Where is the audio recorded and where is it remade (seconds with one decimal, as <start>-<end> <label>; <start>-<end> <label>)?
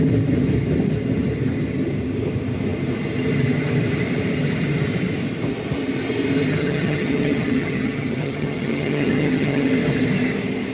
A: 0.0-6.6 recorded; 6.6-9.7 remade; 9.7-10.7 recorded